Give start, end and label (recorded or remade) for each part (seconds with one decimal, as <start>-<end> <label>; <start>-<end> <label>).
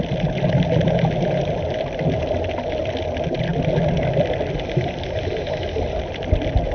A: 0.0-6.7 recorded